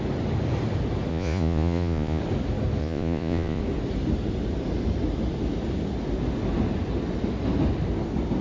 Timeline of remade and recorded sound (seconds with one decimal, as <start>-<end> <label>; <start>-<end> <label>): 0.0-1.1 recorded; 1.1-2.2 remade; 2.2-2.8 recorded; 2.8-3.6 remade; 3.6-8.4 recorded